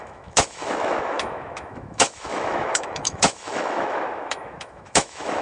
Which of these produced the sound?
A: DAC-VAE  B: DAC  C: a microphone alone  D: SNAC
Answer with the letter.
A